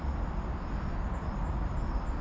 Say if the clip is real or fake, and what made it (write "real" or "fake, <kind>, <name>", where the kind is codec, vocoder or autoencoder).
real